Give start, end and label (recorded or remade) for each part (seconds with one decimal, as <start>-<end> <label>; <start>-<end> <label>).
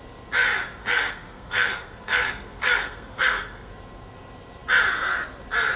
0.0-0.8 recorded; 0.8-3.7 remade; 3.7-5.8 recorded